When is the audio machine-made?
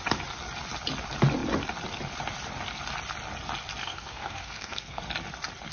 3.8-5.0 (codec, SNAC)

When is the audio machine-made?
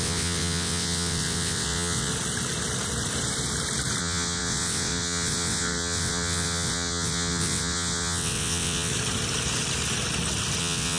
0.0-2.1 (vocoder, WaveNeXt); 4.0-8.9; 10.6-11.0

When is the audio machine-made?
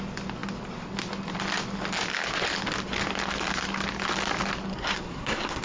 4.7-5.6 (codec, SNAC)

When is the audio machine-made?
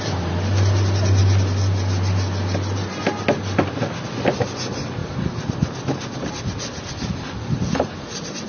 none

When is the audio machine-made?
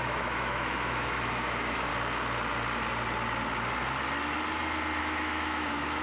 0.0-1.9 (autoencoder, DAC-VAE); 5.0-6.0